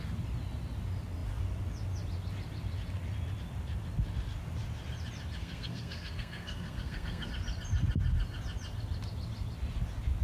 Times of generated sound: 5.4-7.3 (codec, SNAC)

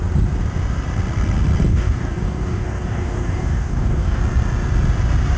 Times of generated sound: 1.7-4.2 (codec, DAC)

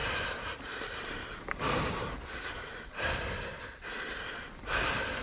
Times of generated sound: 0.0-3.1 (vocoder, BigVGAN v2)

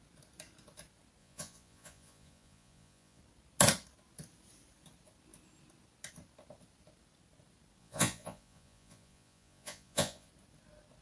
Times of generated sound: 1.2-3.2 (vocoder, Vocos); 7.8-10.3

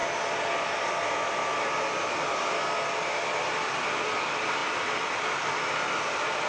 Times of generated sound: 3.2-6.5 (vocoder, BigVGAN v2)